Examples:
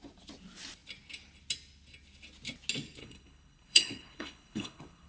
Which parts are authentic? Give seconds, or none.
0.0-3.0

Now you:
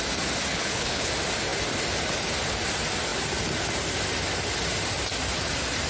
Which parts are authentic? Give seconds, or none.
0.0-0.5; 1.1-5.9

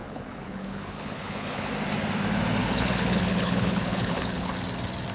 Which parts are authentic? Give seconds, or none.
1.7-2.6; 4.5-5.1